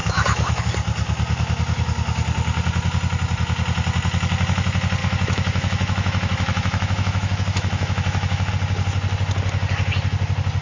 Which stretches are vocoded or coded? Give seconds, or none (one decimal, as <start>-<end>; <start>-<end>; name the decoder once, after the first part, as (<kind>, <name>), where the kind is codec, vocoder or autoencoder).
0.0-0.6 (autoencoder, DAC-VAE); 5.0-8.5